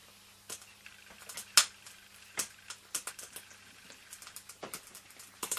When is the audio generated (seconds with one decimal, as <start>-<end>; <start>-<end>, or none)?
none